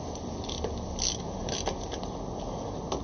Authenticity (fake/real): real